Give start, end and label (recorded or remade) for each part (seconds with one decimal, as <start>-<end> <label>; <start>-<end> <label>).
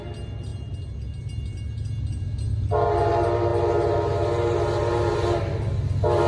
0.0-6.3 recorded